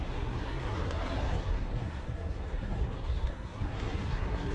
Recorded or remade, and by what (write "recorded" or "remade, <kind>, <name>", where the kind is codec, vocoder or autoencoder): remade, codec, SNAC